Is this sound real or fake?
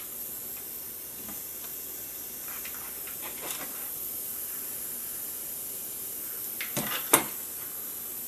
real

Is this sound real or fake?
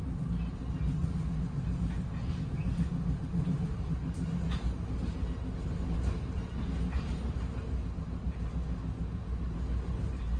real